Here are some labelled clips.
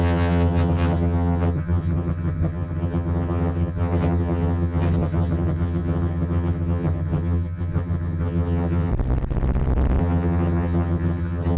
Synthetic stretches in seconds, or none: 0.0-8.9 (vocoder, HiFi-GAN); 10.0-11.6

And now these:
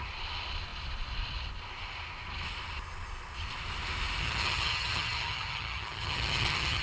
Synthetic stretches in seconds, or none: 4.2-6.8 (vocoder, HiFi-GAN)

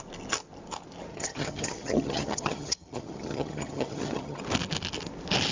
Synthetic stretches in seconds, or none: 1.1-4.4 (vocoder, HiFi-GAN)

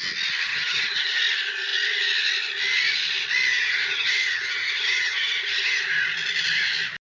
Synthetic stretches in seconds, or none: 0.5-1.2 (vocoder, HiFi-GAN); 3.5-5.8

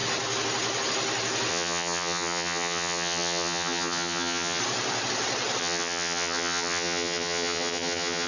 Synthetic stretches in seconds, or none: 1.5-4.6 (vocoder, HiFi-GAN); 5.6-8.3

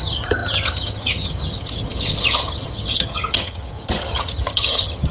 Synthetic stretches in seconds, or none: 0.0-5.1 (vocoder, HiFi-GAN)

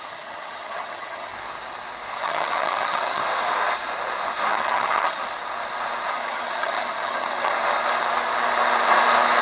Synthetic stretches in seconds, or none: 0.0-1.3 (vocoder, HiFi-GAN); 2.1-3.2; 4.5-5.2; 6.1-7.5